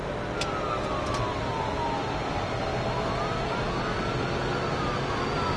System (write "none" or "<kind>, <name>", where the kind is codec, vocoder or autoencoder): none